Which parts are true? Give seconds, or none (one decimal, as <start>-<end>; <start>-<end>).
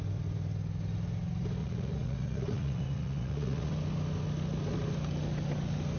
0.0-1.6; 3.7-6.0